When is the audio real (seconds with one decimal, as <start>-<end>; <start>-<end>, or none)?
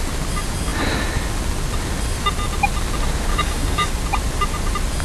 0.0-3.3; 3.9-5.0